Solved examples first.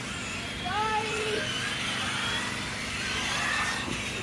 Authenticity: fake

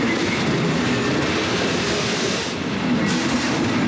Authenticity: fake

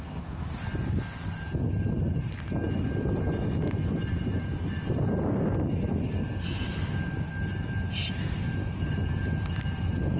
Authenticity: real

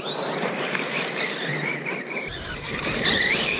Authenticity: fake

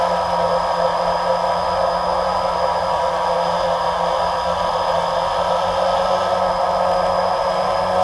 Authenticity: real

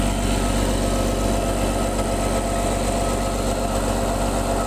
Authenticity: real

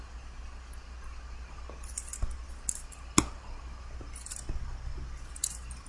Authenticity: real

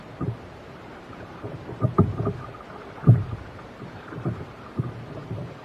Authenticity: fake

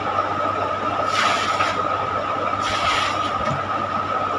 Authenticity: real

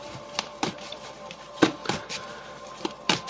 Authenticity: fake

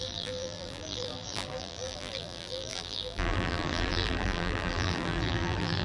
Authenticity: fake